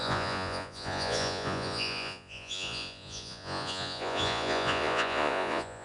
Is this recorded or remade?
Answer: remade